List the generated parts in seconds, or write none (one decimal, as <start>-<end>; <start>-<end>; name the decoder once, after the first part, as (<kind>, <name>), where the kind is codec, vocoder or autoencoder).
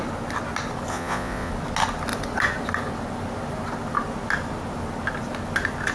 0.9-1.5 (vocoder, Vocos)